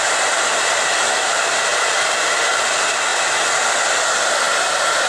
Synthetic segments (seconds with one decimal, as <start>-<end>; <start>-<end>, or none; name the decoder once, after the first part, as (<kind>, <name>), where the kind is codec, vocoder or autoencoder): 1.7-2.3 (vocoder, BigVGAN v2)